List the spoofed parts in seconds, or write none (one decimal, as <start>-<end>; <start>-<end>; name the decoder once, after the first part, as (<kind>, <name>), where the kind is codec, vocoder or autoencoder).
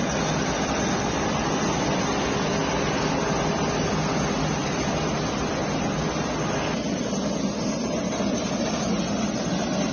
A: 4.6-5.1 (vocoder, BigVGAN v2)